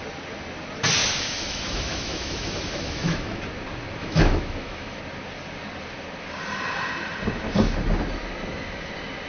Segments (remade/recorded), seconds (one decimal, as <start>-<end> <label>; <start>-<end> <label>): 0.0-1.0 recorded; 1.0-3.4 remade; 3.4-4.0 recorded; 4.0-5.0 remade; 5.0-9.3 recorded